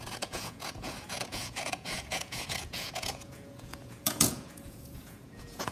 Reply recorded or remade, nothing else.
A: remade